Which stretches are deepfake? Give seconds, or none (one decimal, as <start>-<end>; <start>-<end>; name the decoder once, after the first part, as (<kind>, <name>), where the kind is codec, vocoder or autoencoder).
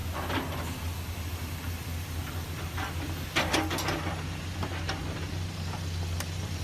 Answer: none